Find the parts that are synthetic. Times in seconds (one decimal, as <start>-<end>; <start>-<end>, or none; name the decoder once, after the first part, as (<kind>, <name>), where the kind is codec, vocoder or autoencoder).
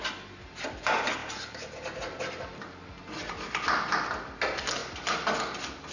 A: none